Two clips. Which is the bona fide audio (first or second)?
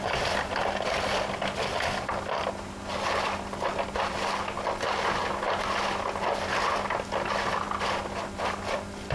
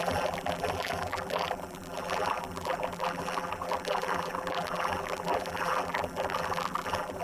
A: first